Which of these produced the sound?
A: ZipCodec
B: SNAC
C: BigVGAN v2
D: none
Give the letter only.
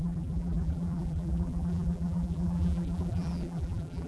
C